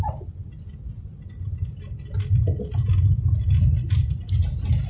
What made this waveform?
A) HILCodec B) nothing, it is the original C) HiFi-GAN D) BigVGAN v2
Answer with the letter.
B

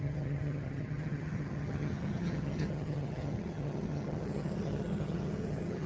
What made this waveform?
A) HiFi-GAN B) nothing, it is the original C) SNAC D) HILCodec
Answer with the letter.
A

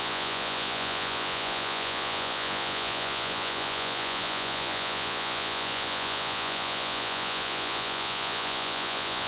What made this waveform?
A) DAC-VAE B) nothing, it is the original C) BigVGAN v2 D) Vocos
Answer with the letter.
D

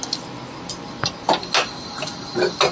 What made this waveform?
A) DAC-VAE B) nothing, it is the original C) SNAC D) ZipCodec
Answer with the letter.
B